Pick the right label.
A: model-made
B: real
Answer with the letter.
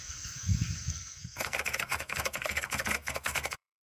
A